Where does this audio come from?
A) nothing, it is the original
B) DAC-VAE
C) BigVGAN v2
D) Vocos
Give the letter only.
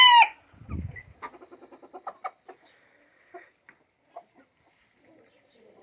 A